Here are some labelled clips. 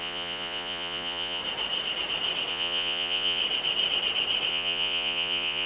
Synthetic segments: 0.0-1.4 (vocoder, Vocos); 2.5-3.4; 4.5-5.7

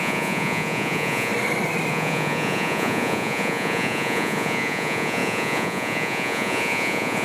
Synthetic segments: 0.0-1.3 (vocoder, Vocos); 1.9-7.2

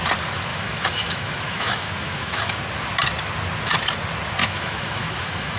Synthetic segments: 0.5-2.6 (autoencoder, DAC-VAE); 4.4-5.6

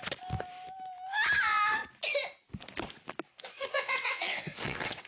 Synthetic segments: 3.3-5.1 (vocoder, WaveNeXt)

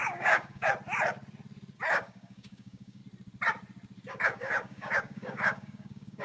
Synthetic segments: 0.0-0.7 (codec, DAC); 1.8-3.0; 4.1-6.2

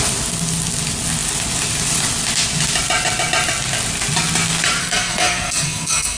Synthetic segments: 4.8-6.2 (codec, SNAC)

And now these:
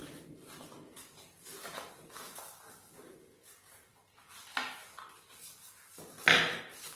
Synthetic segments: 0.0-1.3 (vocoder, BigVGAN v2)